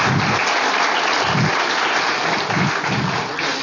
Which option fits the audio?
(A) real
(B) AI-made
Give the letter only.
A